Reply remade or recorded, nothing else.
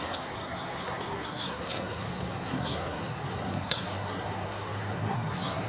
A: remade